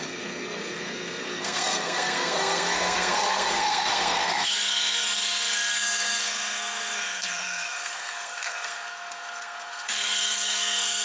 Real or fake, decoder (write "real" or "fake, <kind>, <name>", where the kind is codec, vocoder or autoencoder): fake, codec, SNAC